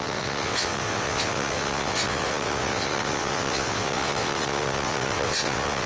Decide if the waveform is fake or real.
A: fake